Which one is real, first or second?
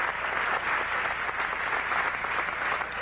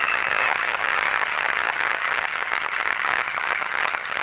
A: first